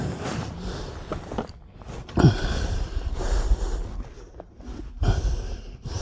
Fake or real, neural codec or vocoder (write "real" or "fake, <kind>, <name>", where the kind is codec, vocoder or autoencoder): real